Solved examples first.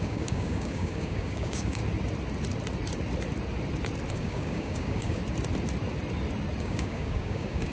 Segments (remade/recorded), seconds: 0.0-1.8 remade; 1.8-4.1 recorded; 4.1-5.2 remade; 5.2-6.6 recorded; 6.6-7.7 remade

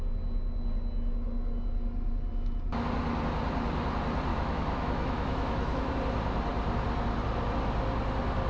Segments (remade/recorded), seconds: 0.0-4.3 recorded; 4.3-5.9 remade; 5.9-8.5 recorded